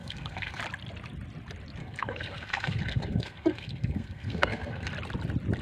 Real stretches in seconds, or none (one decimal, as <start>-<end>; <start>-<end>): 0.6-1.8; 4.9-5.6